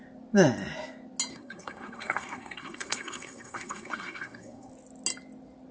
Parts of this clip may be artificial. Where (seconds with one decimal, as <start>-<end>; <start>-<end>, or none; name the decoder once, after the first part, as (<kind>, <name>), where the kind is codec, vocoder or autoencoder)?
1.3-4.7 (codec, SNAC)

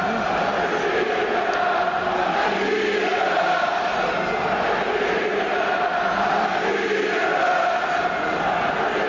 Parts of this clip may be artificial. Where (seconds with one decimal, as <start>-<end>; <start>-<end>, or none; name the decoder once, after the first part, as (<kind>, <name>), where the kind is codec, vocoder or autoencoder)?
none